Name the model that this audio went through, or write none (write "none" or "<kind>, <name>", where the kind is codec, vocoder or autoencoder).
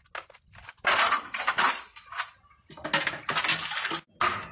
none